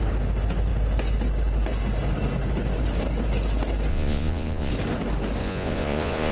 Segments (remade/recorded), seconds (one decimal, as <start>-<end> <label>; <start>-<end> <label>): 0.0-3.9 recorded; 3.9-4.7 remade; 4.7-5.4 recorded; 5.4-6.3 remade